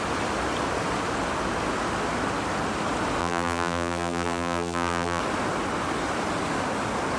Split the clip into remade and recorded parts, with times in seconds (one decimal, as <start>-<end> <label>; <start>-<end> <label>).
0.0-3.2 recorded; 3.2-5.2 remade; 5.2-7.2 recorded